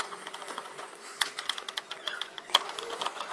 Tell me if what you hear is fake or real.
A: fake